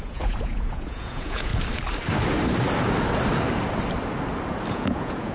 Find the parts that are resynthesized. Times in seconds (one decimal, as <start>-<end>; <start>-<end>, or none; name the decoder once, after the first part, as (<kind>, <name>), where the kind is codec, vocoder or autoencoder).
0.0-1.5 (vocoder, Vocos); 4.7-5.3